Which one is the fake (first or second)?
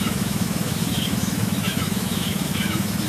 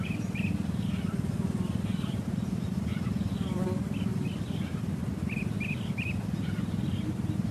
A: first